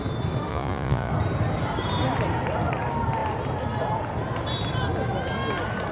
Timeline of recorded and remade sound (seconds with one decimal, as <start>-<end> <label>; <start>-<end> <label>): 0.0-0.5 recorded; 0.5-1.1 remade; 1.1-5.9 recorded